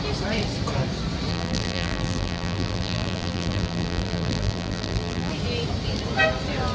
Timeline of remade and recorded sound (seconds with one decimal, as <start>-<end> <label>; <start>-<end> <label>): 0.0-1.3 recorded; 1.3-5.3 remade; 5.3-6.7 recorded